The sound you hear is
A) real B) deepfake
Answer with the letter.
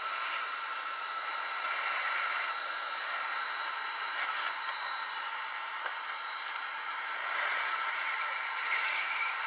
B